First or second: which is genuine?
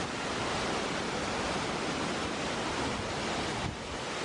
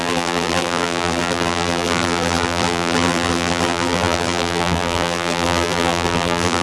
first